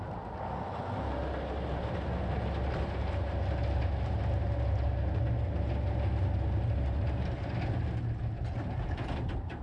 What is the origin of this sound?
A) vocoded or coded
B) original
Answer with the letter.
B